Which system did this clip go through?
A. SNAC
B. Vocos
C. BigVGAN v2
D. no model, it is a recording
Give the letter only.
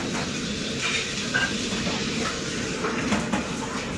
C